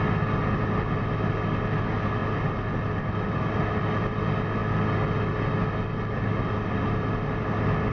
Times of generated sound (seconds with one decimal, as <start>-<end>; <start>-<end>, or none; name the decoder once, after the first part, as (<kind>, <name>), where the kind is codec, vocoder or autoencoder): none